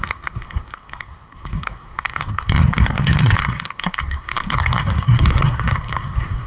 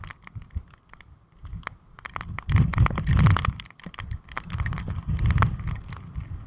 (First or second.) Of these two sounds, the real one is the second